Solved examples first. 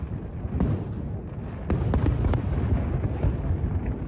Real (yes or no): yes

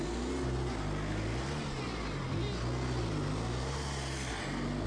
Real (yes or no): yes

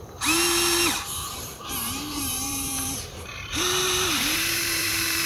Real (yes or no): no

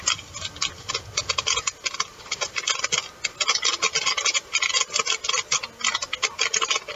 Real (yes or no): yes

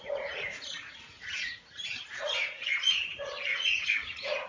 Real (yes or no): no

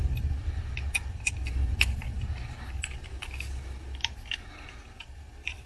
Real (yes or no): yes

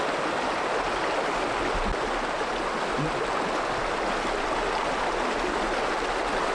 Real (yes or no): yes